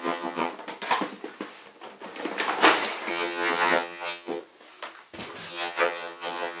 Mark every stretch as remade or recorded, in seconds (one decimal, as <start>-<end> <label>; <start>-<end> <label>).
0.0-0.5 remade; 0.5-3.1 recorded; 3.1-4.4 remade; 4.4-5.5 recorded; 5.5-6.6 remade